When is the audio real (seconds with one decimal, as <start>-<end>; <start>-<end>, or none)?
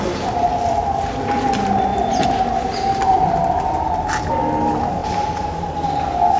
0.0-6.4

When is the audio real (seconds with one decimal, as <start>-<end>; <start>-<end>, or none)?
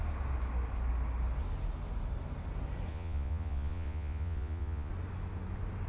0.0-2.9; 4.9-5.9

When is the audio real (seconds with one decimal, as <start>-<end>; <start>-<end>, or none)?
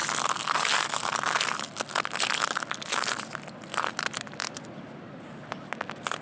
0.0-6.2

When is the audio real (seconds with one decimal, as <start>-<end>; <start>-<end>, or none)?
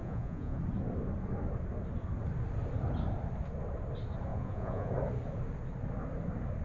0.6-4.3; 4.9-6.6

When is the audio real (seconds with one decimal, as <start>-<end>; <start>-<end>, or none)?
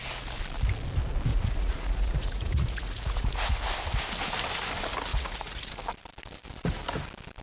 0.0-1.3; 3.6-5.1; 5.6-7.4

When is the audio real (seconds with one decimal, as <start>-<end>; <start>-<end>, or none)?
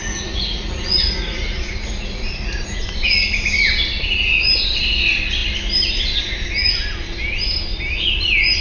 2.8-8.6